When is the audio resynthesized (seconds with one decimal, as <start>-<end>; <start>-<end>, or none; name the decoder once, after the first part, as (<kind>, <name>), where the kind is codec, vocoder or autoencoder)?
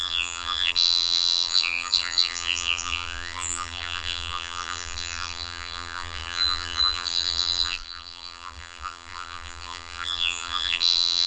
0.0-11.3 (vocoder, BigVGAN v2)